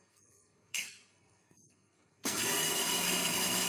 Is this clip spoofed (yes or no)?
yes